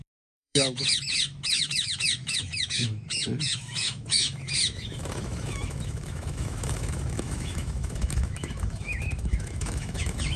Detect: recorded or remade remade